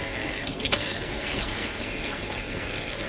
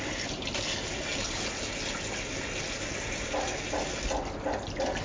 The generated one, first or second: first